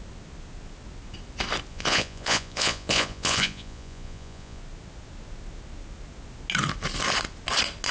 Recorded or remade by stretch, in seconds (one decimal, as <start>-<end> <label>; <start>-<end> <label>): 0.0-1.7 recorded; 1.7-4.6 remade; 4.6-7.9 recorded